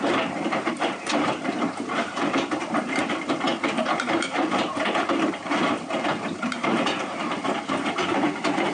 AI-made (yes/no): yes